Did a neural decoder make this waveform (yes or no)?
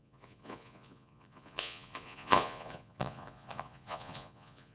yes